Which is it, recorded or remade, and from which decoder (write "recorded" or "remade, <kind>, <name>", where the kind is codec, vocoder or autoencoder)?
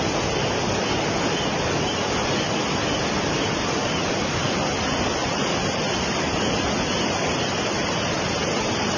recorded